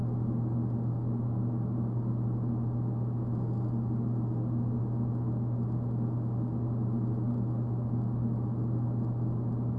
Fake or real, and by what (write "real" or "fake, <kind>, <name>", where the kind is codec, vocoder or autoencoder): real